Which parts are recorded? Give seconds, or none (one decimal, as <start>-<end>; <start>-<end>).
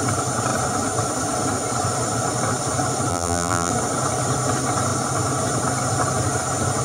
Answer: 0.0-3.1; 3.7-6.8